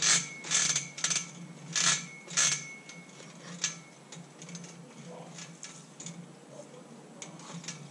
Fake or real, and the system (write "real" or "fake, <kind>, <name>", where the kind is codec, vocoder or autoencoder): real